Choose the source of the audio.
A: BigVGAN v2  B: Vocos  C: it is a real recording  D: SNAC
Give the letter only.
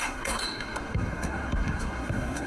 D